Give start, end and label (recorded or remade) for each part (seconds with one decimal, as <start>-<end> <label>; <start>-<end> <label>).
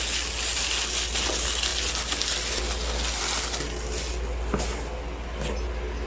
0.0-6.1 recorded